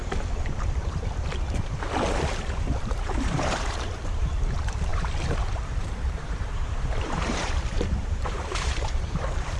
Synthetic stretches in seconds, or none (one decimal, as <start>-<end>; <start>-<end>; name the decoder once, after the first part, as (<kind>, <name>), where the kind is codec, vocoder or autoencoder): 2.8-9.6 (vocoder, BigVGAN v2)